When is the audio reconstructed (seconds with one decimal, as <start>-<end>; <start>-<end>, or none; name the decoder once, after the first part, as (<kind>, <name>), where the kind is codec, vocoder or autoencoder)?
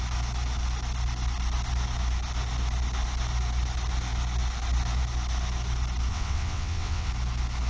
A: 6.1-7.1 (vocoder, WaveNeXt)